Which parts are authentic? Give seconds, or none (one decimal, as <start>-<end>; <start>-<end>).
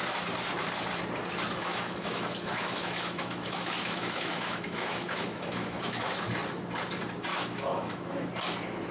0.0-1.6; 6.2-7.3; 8.3-8.9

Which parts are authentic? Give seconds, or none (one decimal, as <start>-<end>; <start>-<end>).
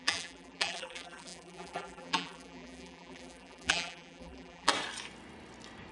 4.7-5.9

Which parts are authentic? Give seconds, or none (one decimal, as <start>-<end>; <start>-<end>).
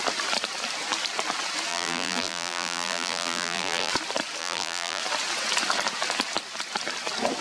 0.0-1.7; 3.9-4.4; 5.0-7.4